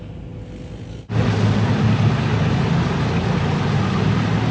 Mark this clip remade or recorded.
recorded